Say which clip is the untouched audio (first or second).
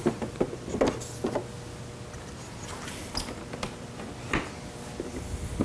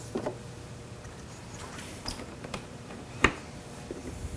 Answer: first